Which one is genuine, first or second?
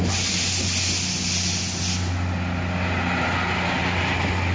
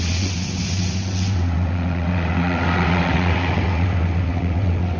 first